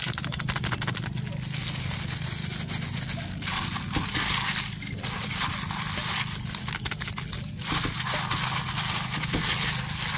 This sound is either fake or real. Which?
real